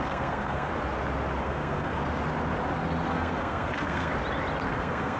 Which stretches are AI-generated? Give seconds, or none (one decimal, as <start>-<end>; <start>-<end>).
0.0-0.7; 1.4-2.0; 3.1-4.1; 4.7-5.2